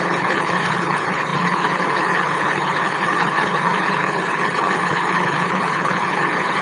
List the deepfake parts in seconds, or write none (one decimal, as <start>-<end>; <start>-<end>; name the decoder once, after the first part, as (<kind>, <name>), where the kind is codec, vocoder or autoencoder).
0.0-6.6 (codec, HILCodec)